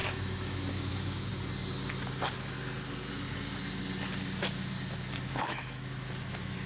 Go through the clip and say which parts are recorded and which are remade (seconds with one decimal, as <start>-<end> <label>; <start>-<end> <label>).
0.0-1.3 remade; 1.3-5.3 recorded; 5.3-6.7 remade